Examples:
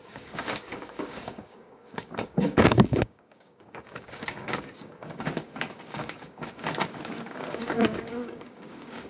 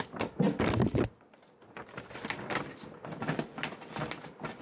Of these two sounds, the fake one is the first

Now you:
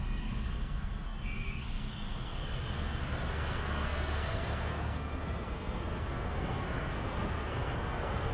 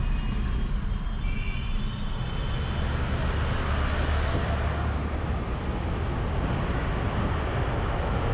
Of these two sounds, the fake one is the first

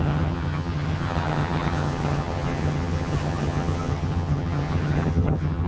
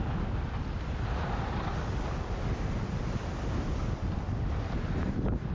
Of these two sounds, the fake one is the first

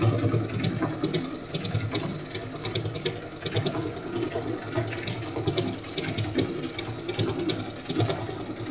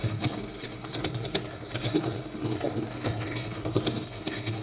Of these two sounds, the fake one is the second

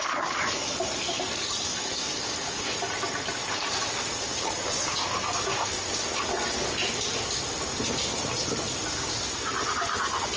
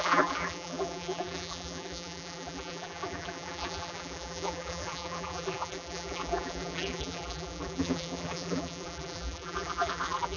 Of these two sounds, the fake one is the second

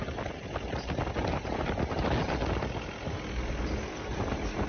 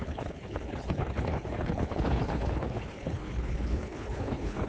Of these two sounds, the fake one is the second